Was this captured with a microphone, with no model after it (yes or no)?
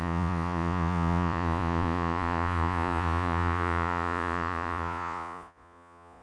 no